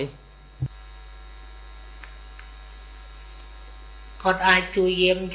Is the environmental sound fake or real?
real